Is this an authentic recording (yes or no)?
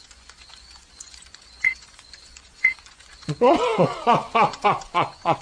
no